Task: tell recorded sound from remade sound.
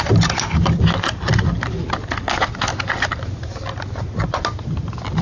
recorded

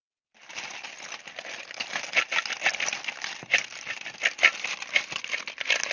recorded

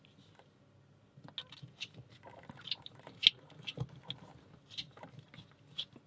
recorded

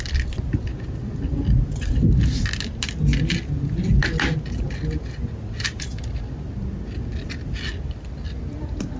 recorded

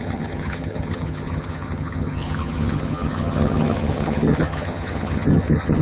remade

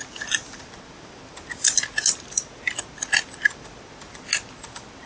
recorded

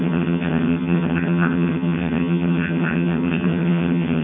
remade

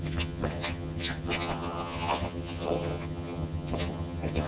remade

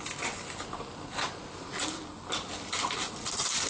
recorded